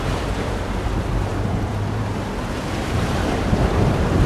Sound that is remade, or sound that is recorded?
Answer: remade